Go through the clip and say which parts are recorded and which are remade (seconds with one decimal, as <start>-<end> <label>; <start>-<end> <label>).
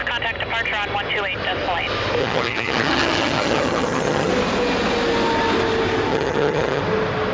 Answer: 0.0-2.2 recorded; 2.2-4.3 remade; 4.3-6.1 recorded; 6.1-6.8 remade; 6.8-7.3 recorded